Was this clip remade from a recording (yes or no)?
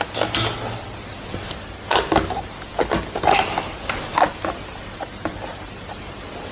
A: no